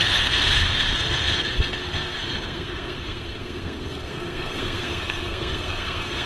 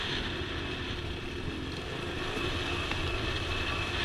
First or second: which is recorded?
second